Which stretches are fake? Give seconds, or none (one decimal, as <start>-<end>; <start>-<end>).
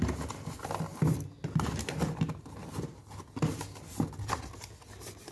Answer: none